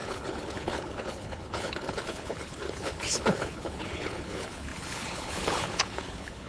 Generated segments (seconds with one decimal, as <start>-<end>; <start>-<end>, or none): 0.0-6.5